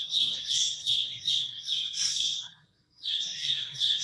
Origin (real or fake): fake